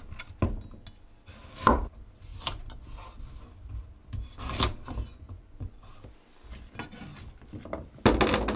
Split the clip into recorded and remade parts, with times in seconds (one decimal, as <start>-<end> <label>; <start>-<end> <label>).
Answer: 0.0-5.1 recorded; 5.1-5.9 remade; 5.9-8.6 recorded